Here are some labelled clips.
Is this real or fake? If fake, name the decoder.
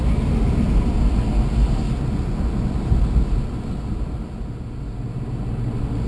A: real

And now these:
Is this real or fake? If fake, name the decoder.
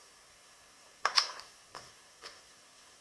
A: fake, codec, SNAC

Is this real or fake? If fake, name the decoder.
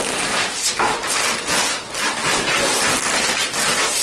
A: real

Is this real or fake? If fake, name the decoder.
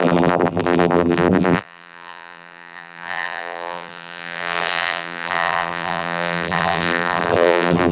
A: fake, vocoder, BigVGAN v2